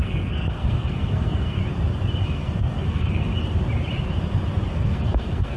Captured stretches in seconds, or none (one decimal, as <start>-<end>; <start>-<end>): 1.6-2.2; 3.3-4.7